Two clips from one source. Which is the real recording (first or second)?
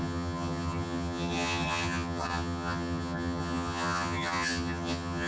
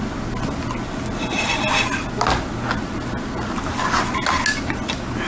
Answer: second